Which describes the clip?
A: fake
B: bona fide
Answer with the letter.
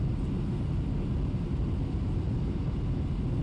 B